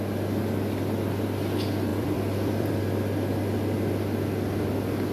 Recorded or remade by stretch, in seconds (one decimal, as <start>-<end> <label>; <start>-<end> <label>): 0.0-1.9 recorded; 1.9-2.7 remade; 2.7-5.1 recorded